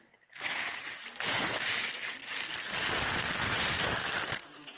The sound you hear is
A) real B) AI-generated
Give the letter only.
A